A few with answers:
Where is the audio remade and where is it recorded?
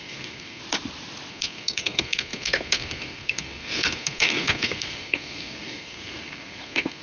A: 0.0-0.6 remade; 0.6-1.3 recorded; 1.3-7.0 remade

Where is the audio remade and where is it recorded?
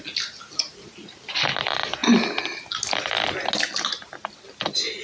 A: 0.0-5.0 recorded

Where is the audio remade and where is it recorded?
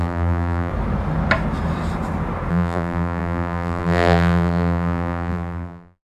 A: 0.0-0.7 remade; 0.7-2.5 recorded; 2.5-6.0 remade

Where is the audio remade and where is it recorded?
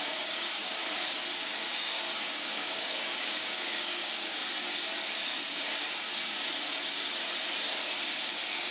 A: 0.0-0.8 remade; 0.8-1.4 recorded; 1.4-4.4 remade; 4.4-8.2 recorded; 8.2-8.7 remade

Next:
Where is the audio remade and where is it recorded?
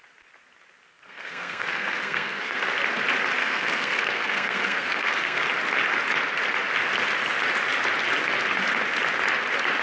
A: 0.0-0.9 recorded; 0.9-2.6 remade; 2.6-3.4 recorded; 3.4-5.4 remade; 5.4-9.8 recorded